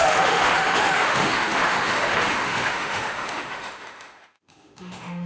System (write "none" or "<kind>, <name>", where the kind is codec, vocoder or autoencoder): autoencoder, DAC-VAE